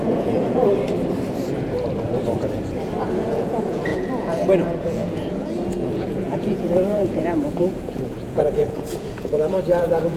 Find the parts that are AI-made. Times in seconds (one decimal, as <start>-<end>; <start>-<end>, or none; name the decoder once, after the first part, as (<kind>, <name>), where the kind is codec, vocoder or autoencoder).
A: 0.0-0.6 (vocoder, Vocos); 3.3-10.2